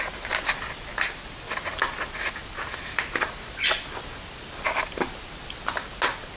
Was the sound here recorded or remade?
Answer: recorded